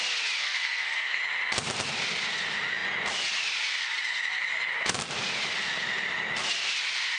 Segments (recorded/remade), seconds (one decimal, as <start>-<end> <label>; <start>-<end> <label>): 0.0-0.4 recorded; 0.4-1.2 remade; 1.2-7.2 recorded